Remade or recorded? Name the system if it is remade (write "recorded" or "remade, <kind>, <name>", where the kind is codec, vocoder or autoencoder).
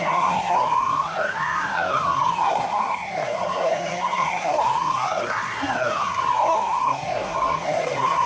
remade, codec, SNAC